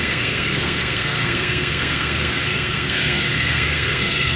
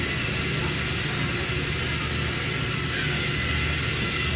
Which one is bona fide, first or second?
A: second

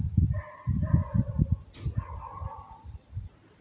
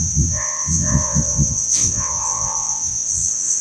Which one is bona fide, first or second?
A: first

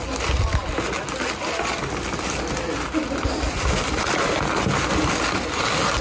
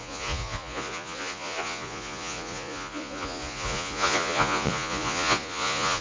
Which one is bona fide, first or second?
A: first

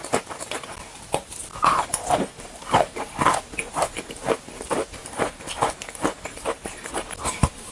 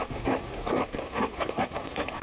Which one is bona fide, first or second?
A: first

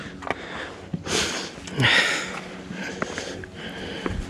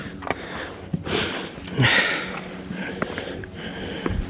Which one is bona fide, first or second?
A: first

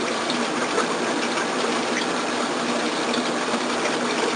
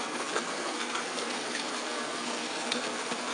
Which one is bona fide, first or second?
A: first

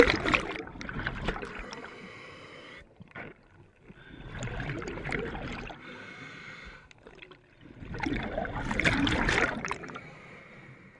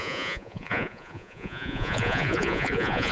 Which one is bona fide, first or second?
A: first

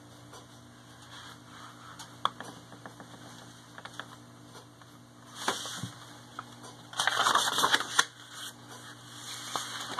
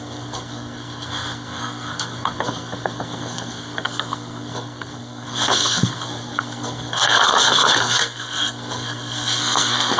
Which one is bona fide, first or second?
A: first